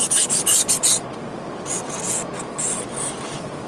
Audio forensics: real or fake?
real